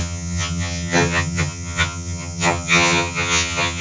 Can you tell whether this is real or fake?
fake